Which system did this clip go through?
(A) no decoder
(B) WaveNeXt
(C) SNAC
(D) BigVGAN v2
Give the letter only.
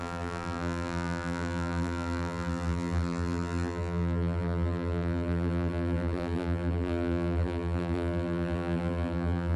D